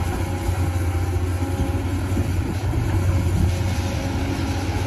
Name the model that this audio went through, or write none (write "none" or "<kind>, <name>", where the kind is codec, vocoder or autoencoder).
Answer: none